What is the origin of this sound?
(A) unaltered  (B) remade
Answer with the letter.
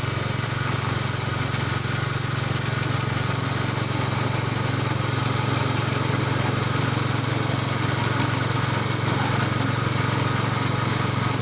A